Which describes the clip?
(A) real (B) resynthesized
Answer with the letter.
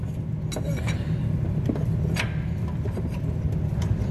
A